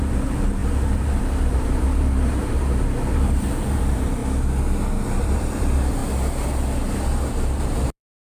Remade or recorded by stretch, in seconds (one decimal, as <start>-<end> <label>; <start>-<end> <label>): 0.0-4.2 remade; 4.2-5.2 recorded; 5.2-6.0 remade; 6.0-7.3 recorded; 7.3-8.2 remade